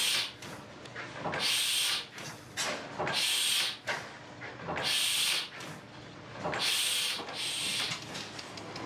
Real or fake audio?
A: real